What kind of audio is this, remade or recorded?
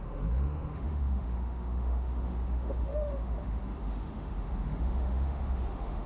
remade